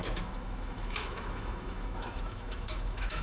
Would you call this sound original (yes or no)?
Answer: no